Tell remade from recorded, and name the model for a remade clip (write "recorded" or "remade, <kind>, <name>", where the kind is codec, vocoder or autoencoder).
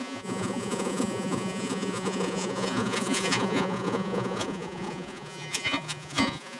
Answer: remade, vocoder, Vocos